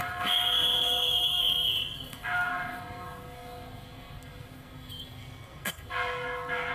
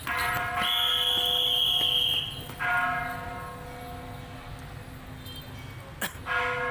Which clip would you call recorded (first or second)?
second